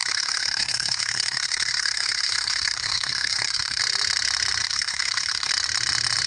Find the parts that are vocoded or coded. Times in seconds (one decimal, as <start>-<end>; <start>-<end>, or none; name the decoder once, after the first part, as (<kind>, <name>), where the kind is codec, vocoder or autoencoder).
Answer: 0.0-3.8 (codec, SNAC); 4.6-5.5